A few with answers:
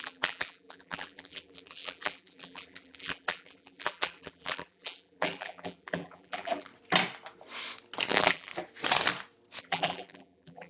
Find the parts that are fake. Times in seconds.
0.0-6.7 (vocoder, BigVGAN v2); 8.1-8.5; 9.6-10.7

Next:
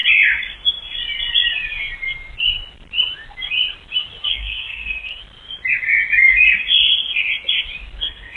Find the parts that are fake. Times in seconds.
4.3-5.2 (codec, SNAC); 8.0-8.4